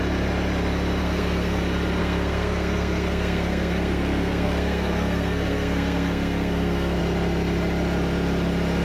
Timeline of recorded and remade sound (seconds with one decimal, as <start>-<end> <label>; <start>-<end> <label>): 0.0-1.0 recorded; 1.0-1.6 remade; 1.6-2.0 recorded; 2.0-7.0 remade; 7.0-8.8 recorded